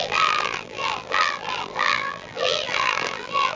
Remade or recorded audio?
remade